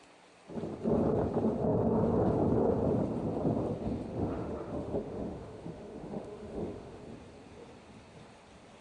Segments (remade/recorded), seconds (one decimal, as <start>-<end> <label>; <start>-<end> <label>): 0.0-4.1 recorded; 4.1-7.0 remade; 7.0-8.8 recorded